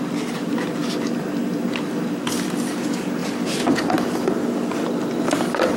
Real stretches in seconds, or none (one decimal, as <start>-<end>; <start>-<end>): 0.0-0.8; 1.4-3.2; 3.9-5.8